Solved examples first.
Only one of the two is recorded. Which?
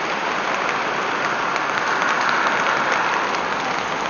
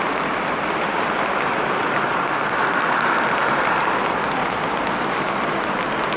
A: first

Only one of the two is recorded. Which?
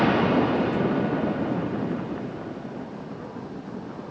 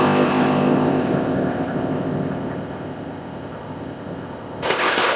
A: first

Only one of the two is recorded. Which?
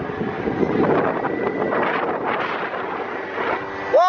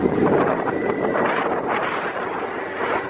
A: first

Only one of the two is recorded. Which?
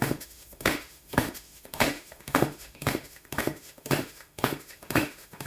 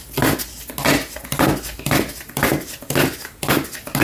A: second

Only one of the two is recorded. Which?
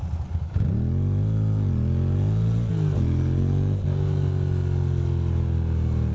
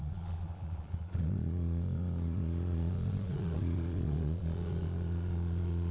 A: first